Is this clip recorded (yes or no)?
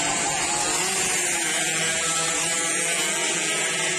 yes